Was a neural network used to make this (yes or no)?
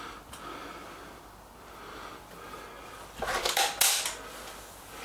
no